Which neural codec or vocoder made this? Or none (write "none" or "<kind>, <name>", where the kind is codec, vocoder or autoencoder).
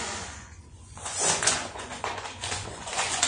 vocoder, Vocos